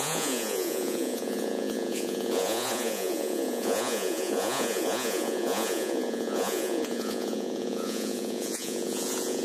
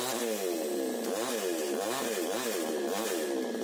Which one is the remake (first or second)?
first